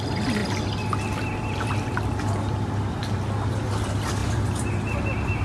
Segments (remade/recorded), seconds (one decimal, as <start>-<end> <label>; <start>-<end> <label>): 0.0-5.4 recorded